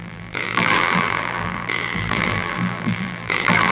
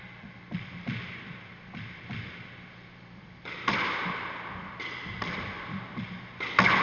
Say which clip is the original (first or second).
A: second